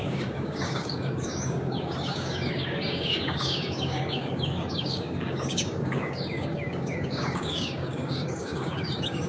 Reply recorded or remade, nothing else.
remade